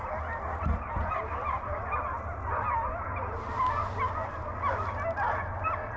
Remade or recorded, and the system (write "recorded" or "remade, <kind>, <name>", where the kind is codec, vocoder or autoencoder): recorded